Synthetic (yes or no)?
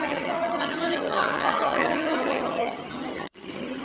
yes